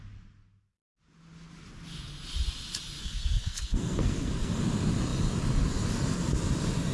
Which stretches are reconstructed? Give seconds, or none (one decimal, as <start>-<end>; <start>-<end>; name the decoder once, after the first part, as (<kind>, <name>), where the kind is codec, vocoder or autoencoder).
3.0-4.6 (codec, SNAC)